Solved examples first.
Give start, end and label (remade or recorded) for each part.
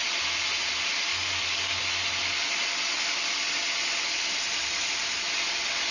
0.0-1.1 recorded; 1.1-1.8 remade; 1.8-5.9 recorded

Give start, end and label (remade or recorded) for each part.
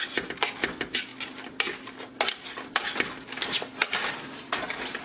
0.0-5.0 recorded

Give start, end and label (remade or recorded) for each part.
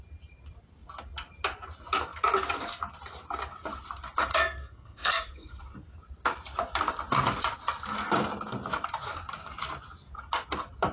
0.0-4.3 recorded; 4.3-5.6 remade; 5.6-10.9 recorded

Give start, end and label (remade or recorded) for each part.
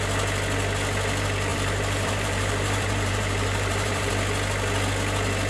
0.0-1.5 recorded; 1.5-4.1 remade; 4.1-5.5 recorded